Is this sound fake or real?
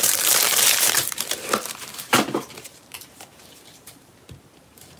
fake